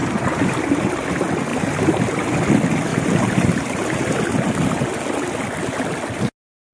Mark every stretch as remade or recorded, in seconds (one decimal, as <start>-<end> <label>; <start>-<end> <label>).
0.0-0.9 remade; 0.9-1.5 recorded; 1.5-2.3 remade; 2.3-2.9 recorded; 2.9-4.2 remade; 4.2-6.7 recorded